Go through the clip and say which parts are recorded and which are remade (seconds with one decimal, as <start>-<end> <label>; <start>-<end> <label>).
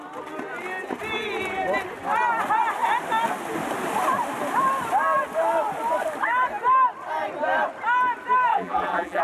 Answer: 0.0-8.5 recorded; 8.5-9.2 remade